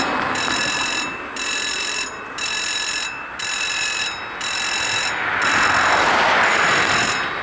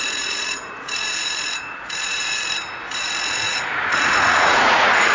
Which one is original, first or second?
first